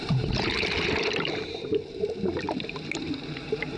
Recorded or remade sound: remade